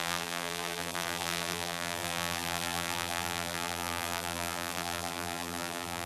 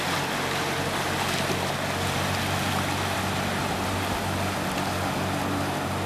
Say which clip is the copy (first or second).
first